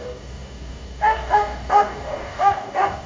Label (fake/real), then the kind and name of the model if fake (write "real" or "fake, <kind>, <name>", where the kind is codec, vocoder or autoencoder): fake, codec, DAC